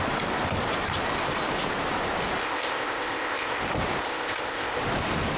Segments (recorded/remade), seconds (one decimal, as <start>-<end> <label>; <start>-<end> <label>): 0.0-2.4 recorded; 2.4-3.6 remade; 3.6-4.0 recorded; 4.0-4.8 remade; 4.8-5.4 recorded